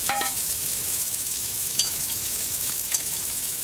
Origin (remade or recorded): remade